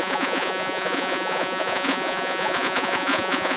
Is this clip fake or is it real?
fake